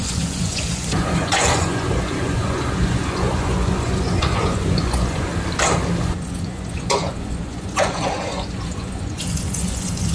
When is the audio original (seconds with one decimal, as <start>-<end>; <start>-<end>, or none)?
5.3-6.0